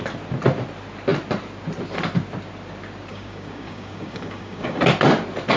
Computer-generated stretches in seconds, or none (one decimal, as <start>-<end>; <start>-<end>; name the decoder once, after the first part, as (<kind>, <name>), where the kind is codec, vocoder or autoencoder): 3.1-4.8 (codec, DAC)